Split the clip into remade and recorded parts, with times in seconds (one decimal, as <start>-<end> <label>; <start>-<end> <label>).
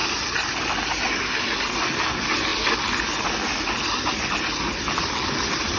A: 0.0-5.8 recorded